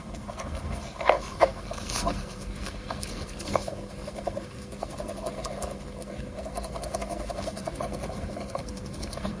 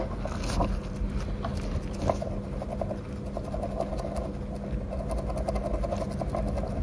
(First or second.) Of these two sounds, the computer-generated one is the first